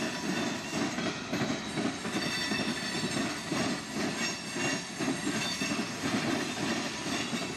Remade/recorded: recorded